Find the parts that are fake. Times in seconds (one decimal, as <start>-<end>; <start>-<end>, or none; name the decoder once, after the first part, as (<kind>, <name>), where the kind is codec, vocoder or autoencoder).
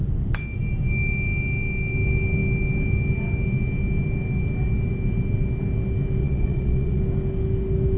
6.2-7.0 (vocoder, Vocos)